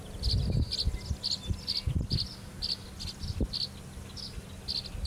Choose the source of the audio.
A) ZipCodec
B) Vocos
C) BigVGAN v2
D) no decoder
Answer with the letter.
D